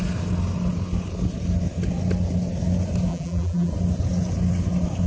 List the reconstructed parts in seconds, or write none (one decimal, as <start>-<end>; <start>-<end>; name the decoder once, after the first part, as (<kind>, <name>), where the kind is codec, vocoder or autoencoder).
3.1-3.7 (vocoder, BigVGAN v2)